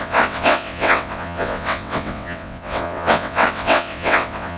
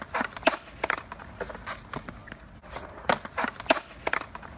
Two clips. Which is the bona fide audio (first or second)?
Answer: second